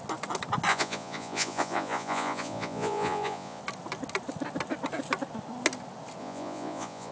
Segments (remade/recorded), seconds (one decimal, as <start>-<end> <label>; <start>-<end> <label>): 0.0-0.7 recorded; 0.7-3.6 remade; 3.6-6.2 recorded; 6.2-7.1 remade